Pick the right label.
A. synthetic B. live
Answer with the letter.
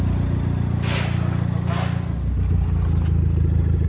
B